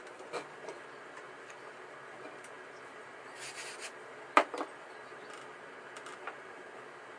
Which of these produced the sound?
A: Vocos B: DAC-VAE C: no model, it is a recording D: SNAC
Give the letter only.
C